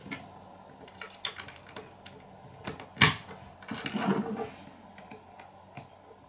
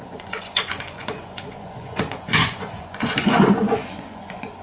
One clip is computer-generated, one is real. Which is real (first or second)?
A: first